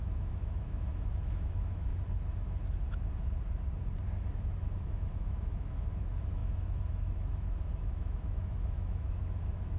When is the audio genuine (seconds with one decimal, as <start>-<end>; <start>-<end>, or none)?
1.9-4.4